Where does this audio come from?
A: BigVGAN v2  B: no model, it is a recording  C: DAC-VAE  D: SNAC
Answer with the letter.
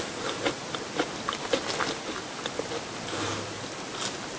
B